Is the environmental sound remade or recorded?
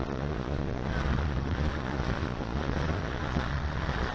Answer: remade